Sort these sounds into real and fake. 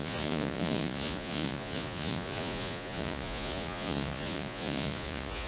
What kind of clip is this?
fake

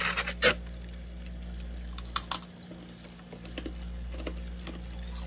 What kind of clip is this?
real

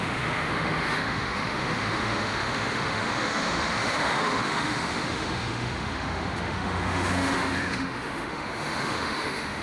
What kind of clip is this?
fake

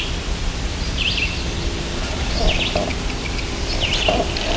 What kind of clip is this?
real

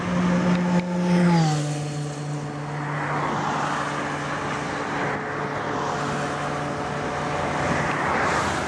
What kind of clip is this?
real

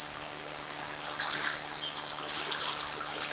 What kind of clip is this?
real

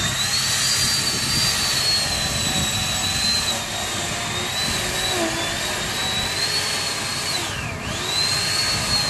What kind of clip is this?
real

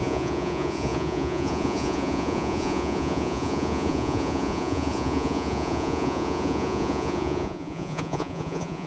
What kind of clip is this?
fake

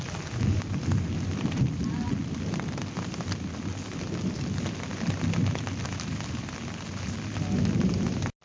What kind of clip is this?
real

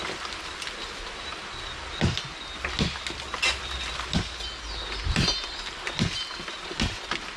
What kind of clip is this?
real